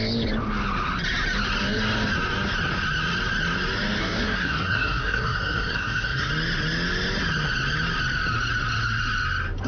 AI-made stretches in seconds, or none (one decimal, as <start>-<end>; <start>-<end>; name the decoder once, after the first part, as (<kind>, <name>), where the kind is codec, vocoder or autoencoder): 4.0-6.3 (codec, SNAC)